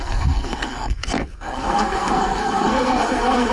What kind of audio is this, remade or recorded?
remade